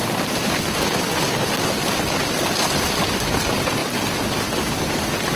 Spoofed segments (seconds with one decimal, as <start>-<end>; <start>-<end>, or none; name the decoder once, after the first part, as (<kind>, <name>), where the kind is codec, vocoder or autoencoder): none